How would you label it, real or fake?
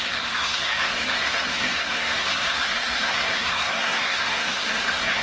fake